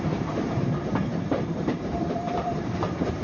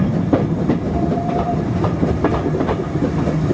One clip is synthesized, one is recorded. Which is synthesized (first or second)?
first